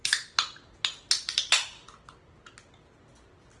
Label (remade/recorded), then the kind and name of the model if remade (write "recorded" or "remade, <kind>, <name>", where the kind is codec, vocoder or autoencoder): recorded